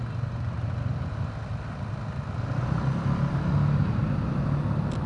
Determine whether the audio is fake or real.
real